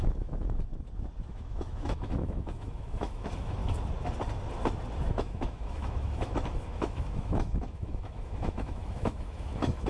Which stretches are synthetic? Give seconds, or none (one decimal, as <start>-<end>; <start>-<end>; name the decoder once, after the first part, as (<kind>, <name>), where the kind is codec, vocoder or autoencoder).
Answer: 0.0-0.7 (autoencoder, DAC-VAE); 1.3-3.6; 5.1-9.9